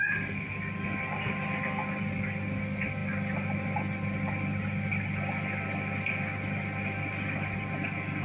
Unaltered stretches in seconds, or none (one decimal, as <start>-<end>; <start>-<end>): 0.0-8.2